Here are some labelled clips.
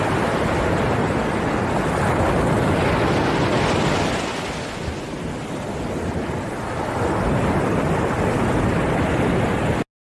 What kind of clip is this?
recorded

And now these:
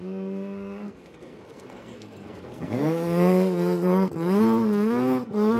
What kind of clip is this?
remade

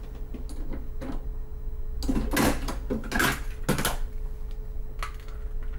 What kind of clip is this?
recorded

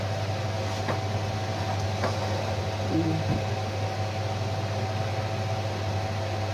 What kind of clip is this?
recorded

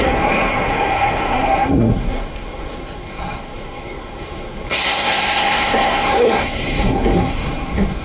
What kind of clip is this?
remade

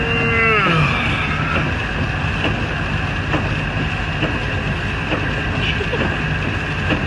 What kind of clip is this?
recorded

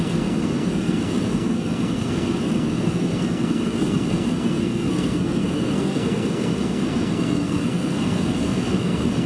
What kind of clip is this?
remade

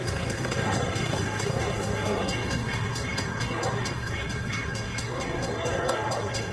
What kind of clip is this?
remade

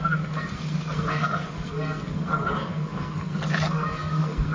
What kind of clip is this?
remade